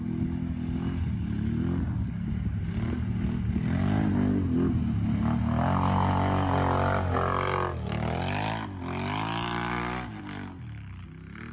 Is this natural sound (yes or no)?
yes